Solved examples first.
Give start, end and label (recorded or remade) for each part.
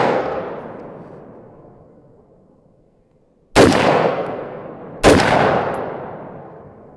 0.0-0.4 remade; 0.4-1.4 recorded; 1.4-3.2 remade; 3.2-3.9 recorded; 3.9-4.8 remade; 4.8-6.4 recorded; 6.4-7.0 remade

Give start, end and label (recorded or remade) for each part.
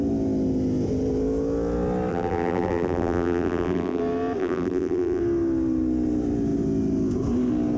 0.0-2.1 recorded; 2.1-4.0 remade; 4.0-4.4 recorded; 4.4-5.2 remade; 5.2-7.8 recorded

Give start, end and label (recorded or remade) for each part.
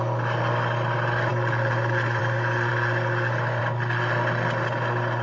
0.0-5.2 recorded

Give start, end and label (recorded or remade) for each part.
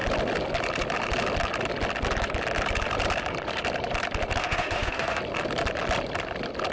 0.0-4.4 recorded; 4.4-5.2 remade; 5.2-6.7 recorded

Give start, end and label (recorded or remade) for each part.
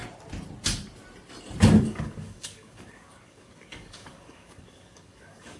0.0-1.8 recorded; 1.8-5.6 remade